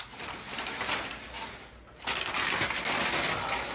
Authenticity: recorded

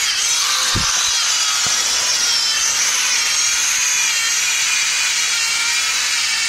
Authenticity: recorded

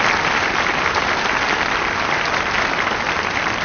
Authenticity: recorded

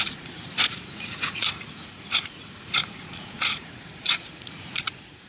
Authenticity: remade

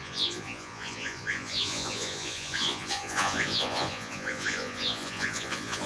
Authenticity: remade